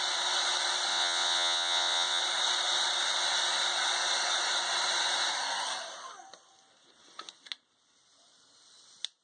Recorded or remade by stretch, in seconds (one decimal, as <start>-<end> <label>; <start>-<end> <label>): 0.0-0.9 recorded; 0.9-2.2 remade; 2.2-9.2 recorded